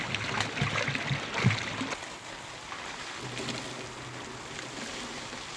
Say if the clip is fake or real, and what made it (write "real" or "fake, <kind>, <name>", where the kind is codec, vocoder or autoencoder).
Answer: real